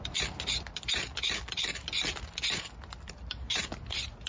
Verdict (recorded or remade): recorded